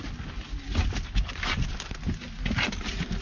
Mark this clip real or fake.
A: real